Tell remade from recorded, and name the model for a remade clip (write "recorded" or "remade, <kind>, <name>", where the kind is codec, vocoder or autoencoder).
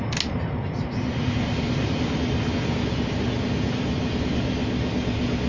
recorded